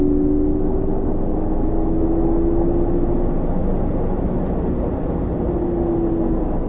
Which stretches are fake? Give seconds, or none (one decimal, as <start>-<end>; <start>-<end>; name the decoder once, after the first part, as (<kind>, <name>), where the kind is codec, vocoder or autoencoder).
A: none